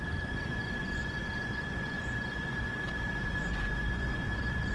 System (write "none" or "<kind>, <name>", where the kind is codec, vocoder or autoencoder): vocoder, Vocos